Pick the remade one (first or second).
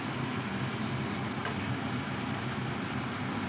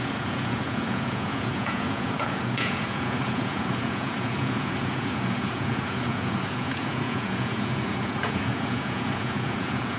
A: second